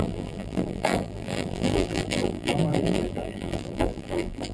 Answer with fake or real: fake